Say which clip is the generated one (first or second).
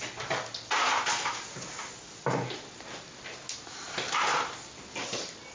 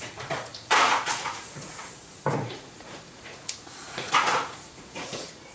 second